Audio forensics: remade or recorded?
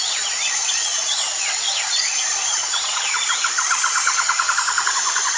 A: remade